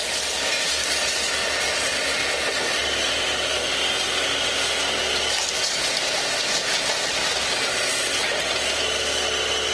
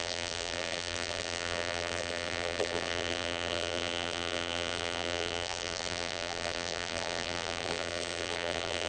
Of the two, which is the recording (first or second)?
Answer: first